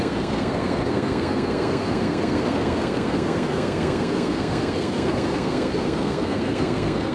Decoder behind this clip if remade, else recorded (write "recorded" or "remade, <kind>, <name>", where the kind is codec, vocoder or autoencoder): remade, codec, SNAC